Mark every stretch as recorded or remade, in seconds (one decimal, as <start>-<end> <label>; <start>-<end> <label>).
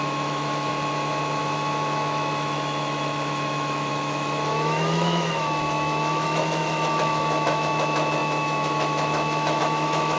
0.0-0.7 remade; 0.7-1.4 recorded; 1.4-10.2 remade